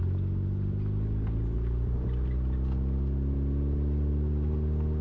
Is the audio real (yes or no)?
yes